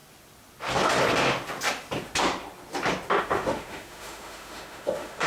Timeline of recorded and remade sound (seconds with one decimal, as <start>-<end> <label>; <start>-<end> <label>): 0.0-3.2 recorded; 3.2-5.3 remade